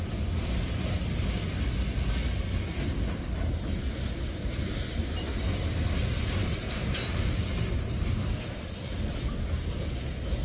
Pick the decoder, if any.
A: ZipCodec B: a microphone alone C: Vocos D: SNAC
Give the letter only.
B